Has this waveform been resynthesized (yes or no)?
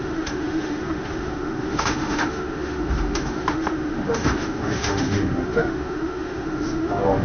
yes